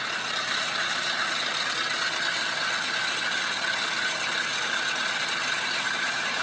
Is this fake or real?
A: real